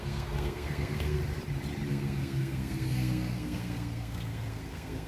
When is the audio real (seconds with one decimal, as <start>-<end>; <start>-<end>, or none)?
1.2-1.9